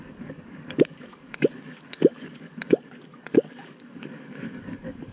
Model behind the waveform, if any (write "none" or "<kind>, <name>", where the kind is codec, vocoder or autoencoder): codec, DAC